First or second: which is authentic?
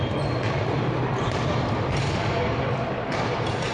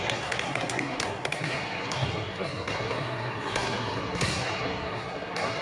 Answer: first